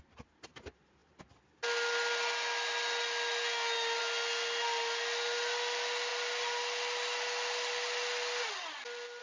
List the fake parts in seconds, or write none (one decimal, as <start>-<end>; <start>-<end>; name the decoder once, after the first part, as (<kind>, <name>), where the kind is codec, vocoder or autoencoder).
none